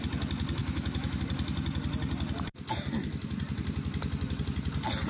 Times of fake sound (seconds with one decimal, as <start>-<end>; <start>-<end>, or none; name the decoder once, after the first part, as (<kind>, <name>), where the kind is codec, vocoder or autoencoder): 0.6-1.2 (autoencoder, DAC-VAE)